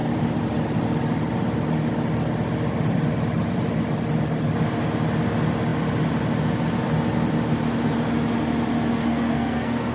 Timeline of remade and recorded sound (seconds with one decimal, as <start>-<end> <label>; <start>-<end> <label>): 0.0-9.0 recorded; 9.0-9.9 remade